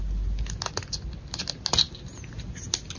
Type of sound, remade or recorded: recorded